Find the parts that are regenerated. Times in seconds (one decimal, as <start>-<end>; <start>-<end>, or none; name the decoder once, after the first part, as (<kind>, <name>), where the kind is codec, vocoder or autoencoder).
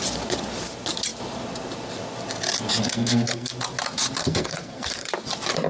2.8-3.5 (codec, SNAC); 4.2-5.1